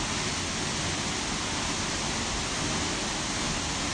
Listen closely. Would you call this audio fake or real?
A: real